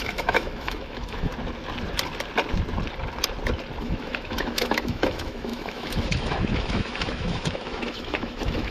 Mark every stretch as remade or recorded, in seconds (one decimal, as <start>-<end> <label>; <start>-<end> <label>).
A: 0.0-1.3 remade; 1.3-3.8 recorded; 3.8-8.7 remade